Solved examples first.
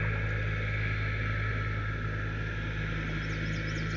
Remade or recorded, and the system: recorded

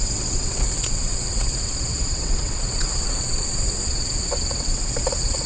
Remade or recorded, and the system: remade, vocoder, WaveNeXt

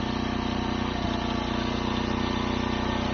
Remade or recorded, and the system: recorded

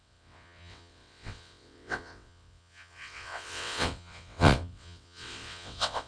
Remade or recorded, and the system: remade, vocoder, WaveNeXt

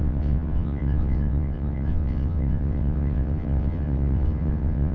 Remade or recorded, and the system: remade, vocoder, WaveNeXt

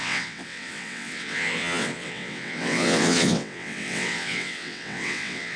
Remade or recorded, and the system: remade, vocoder, WaveNeXt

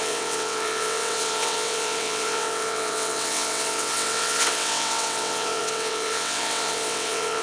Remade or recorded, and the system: remade, vocoder, WaveNeXt